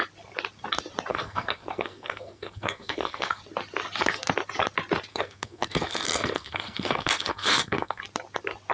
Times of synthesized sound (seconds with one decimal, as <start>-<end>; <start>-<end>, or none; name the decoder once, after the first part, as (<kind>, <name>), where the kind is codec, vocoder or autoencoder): 1.1-3.4 (codec, SNAC); 5.1-8.0